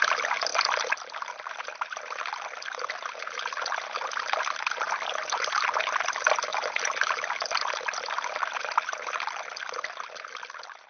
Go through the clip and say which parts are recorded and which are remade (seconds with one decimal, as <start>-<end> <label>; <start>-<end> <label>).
0.0-10.9 recorded